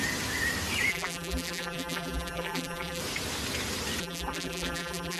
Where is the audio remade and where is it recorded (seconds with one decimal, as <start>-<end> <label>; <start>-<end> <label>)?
0.0-0.9 recorded; 0.9-3.0 remade; 3.0-4.0 recorded; 4.0-5.2 remade